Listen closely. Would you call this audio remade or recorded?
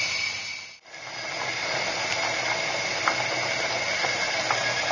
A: recorded